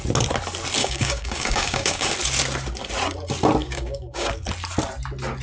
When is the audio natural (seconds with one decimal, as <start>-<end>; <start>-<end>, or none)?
0.0-0.8; 2.1-3.6; 4.3-5.4